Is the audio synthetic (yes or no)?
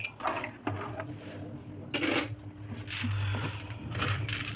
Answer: no